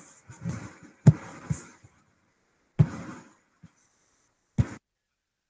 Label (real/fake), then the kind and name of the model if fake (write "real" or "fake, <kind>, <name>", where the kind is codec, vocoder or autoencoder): real